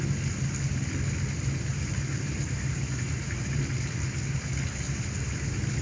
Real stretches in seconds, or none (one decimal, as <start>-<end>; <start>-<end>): 0.0-1.7; 3.6-5.8